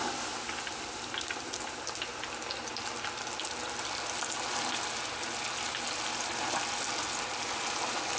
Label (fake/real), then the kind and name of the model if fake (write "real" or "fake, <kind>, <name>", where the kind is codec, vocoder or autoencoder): real